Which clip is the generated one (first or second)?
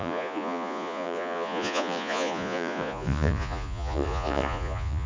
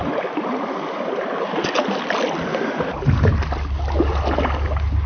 first